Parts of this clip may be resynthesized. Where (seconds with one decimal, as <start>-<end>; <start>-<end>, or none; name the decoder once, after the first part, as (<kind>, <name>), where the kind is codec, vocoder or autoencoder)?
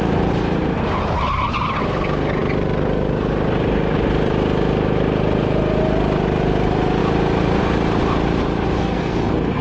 8.8-9.6 (codec, SNAC)